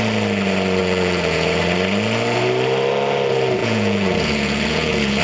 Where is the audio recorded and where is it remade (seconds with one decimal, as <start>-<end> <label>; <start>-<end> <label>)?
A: 0.0-0.8 recorded; 0.8-1.6 remade; 1.6-3.6 recorded; 3.6-5.2 remade